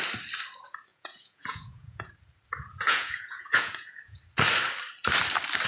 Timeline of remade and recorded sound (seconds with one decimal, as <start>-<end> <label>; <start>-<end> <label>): 0.0-0.9 recorded; 0.9-2.1 remade; 2.1-2.7 recorded; 2.7-4.2 remade; 4.2-5.7 recorded